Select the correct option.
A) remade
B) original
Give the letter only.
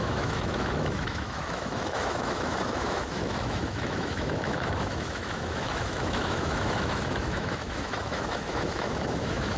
A